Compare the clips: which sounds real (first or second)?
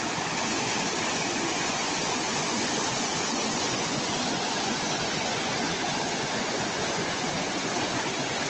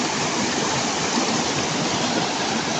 second